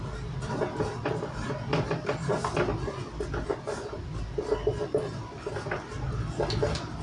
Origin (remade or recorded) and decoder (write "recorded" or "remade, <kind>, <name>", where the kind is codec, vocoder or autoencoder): recorded